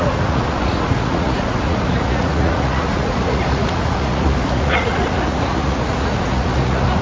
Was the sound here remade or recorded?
remade